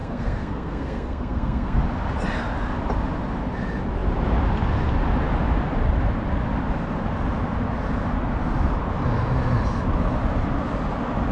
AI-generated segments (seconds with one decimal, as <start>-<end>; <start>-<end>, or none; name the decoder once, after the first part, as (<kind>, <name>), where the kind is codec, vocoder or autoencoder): 0.0-1.8 (codec, SNAC)

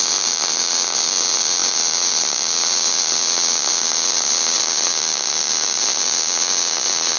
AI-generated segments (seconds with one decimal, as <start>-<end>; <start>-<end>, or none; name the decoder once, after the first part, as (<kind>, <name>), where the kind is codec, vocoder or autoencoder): none

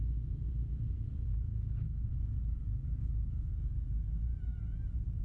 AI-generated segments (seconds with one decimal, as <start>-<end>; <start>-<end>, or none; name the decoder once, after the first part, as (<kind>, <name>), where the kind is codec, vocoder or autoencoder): 1.5-2.2 (codec, HILCodec); 3.0-3.5

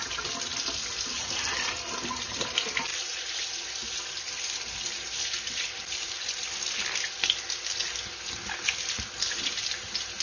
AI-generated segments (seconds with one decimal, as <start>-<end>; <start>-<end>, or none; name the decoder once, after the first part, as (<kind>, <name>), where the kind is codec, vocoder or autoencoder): 2.9-3.4 (vocoder, BigVGAN v2)

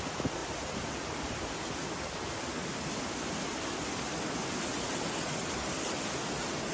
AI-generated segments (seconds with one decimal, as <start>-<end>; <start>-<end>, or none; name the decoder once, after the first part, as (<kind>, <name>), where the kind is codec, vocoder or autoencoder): none

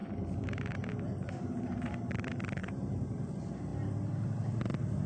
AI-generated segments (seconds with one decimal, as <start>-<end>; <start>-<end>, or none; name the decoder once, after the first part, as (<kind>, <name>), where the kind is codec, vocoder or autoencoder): 0.0-0.9 (vocoder, BigVGAN v2); 2.6-3.3